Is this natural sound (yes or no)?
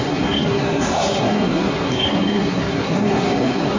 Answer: no